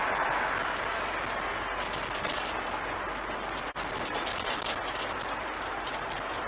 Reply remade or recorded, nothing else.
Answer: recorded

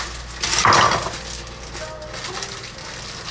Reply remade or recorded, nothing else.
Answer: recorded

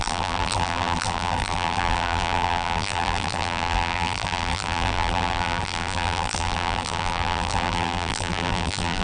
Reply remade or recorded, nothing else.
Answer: remade